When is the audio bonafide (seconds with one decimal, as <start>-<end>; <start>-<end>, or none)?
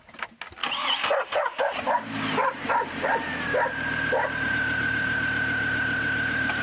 0.0-6.6